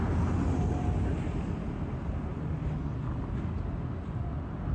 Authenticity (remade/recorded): recorded